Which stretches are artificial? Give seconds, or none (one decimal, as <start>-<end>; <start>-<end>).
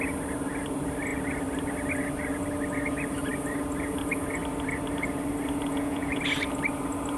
5.7-6.2